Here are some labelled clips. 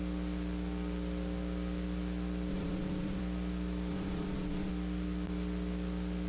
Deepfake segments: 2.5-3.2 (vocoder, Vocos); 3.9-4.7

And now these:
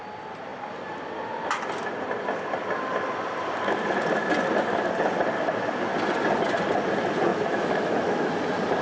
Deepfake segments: 7.3-8.3 (autoencoder, DAC-VAE)

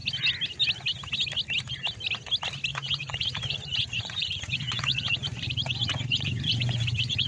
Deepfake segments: 2.7-7.3 (vocoder, Vocos)

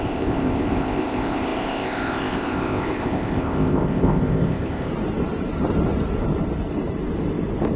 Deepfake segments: 0.0-4.9 (codec, ZipCodec)

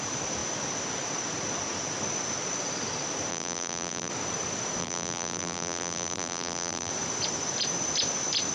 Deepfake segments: 3.3-4.1 (vocoder, BigVGAN v2); 4.8-6.9

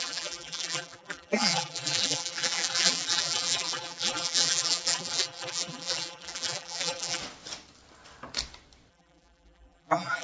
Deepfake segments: 0.0-7.2 (vocoder, BigVGAN v2); 8.9-10.2

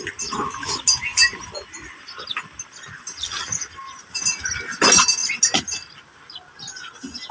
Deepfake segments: none

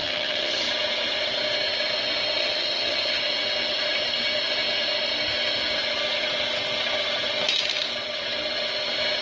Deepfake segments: 0.0-0.6 (vocoder, HiFi-GAN); 2.4-3.2